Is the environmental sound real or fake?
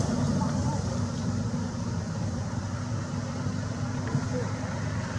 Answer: real